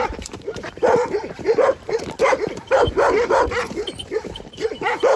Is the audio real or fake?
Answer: fake